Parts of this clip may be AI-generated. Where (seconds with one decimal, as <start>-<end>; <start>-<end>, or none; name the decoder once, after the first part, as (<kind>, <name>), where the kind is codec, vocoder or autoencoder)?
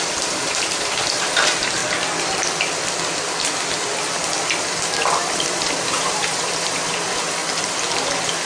0.0-1.8 (vocoder, BigVGAN v2); 5.2-7.4